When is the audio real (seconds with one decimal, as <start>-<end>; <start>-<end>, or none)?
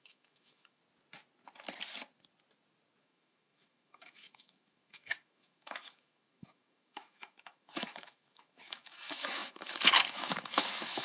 0.8-3.0